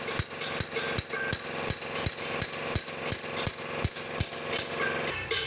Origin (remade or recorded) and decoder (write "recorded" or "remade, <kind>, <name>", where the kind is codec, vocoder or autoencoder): recorded